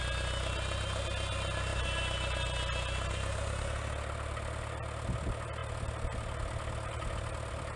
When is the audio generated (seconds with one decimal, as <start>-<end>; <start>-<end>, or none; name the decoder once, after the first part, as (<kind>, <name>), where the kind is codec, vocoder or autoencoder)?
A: none